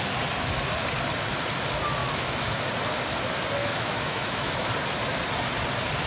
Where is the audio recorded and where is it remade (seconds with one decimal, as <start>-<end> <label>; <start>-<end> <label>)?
0.0-2.0 recorded; 2.0-2.5 remade; 2.5-3.6 recorded; 3.6-4.7 remade; 4.7-6.1 recorded